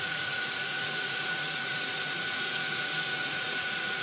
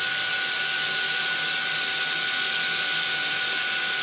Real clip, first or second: second